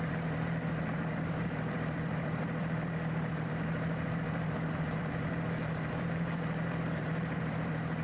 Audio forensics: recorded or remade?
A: remade